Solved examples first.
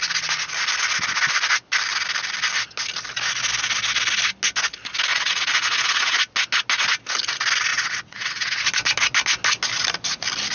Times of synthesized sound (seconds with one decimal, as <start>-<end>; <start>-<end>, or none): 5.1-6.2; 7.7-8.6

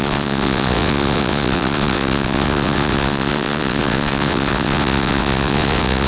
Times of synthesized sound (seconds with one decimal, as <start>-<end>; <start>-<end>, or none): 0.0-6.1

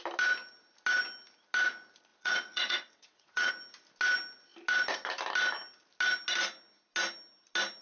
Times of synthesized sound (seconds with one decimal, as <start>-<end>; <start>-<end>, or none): 2.1-3.5

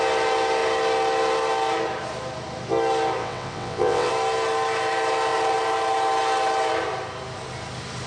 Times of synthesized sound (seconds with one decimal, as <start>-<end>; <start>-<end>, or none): 3.2-4.1